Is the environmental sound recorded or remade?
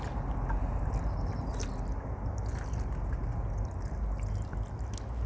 recorded